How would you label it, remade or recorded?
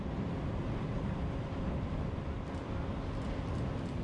recorded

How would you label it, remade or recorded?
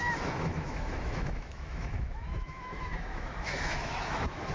remade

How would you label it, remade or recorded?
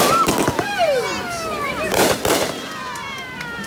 recorded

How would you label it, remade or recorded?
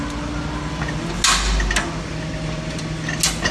recorded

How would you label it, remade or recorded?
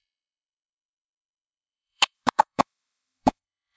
remade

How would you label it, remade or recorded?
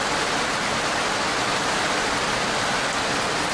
recorded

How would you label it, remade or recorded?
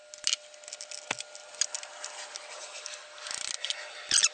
recorded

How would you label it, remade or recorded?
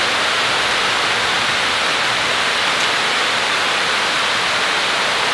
recorded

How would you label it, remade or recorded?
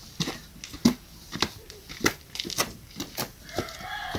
recorded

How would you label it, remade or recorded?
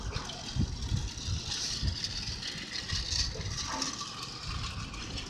recorded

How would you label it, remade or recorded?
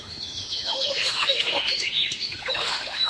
remade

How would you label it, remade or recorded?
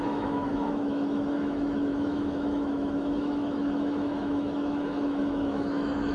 remade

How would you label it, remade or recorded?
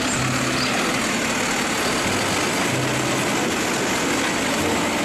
recorded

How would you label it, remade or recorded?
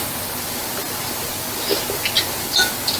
recorded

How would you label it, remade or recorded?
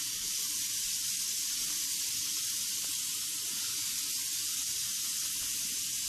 recorded